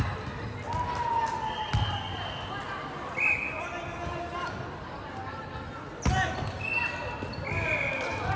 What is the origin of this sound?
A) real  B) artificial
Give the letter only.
A